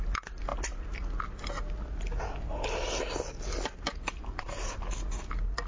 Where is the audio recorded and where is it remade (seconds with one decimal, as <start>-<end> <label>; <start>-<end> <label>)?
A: 0.0-5.7 recorded